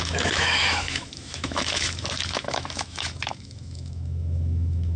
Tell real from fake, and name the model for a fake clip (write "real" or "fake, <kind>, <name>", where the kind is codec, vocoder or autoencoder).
fake, autoencoder, DAC-VAE